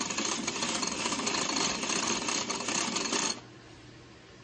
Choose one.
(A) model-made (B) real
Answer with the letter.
B